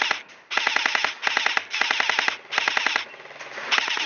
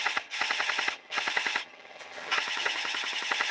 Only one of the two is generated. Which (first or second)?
second